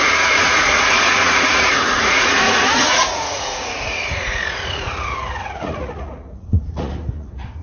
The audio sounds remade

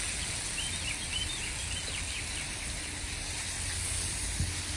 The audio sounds recorded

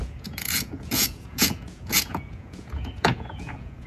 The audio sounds remade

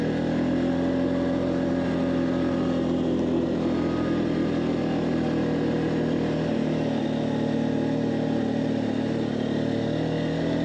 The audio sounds recorded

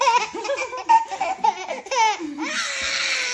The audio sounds recorded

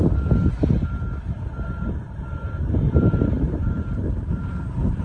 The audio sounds recorded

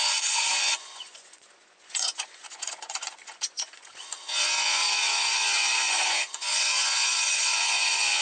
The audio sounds remade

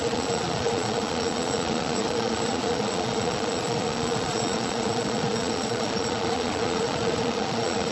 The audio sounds remade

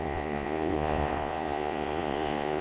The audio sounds remade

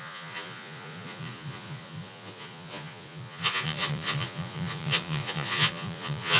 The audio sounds remade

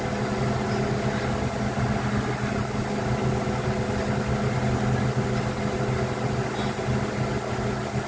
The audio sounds recorded